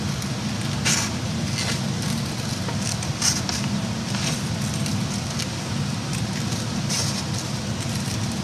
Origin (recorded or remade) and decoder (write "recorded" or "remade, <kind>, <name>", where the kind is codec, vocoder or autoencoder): recorded